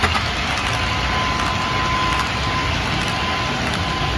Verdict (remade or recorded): recorded